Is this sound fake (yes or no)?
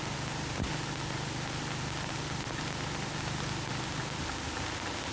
no